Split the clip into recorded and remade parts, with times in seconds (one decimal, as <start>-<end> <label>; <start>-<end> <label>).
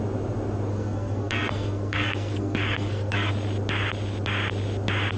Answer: 0.0-0.7 recorded; 0.7-3.3 remade; 3.3-5.2 recorded